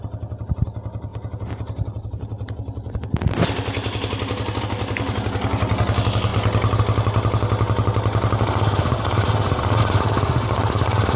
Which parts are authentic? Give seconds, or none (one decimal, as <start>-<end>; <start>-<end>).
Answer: 0.0-11.2